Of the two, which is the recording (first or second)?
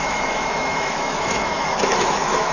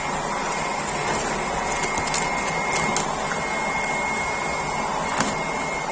second